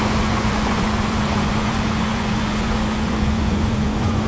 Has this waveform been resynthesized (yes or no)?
yes